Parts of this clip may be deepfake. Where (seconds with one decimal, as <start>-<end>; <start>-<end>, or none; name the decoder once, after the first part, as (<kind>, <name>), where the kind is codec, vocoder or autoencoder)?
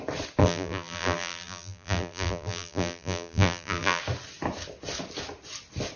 0.4-4.0 (vocoder, BigVGAN v2)